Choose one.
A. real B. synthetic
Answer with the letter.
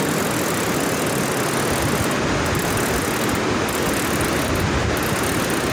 A